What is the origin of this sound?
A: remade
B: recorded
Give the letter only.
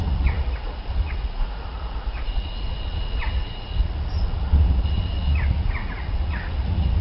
A